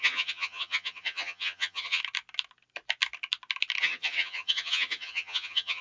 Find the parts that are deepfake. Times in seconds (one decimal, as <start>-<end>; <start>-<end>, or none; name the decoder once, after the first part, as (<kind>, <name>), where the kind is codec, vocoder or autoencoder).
0.0-2.0 (vocoder, HiFi-GAN); 3.8-5.8